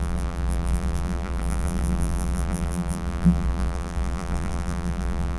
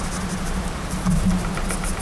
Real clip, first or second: second